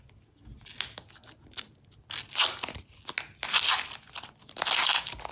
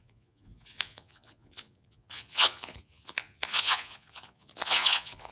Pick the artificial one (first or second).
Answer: second